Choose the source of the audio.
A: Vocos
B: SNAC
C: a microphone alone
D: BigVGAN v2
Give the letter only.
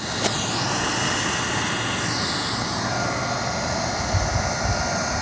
C